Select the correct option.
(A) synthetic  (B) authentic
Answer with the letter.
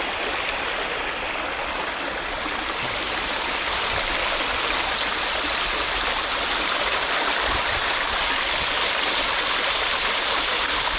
B